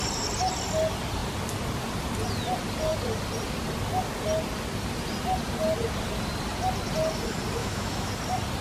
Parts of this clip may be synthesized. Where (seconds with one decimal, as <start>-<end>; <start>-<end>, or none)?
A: 7.6-8.1